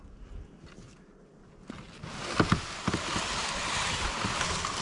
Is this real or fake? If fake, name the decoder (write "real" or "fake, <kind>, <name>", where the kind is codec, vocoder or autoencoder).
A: real